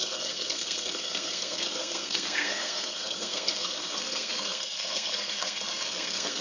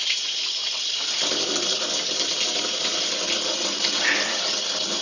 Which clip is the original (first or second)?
second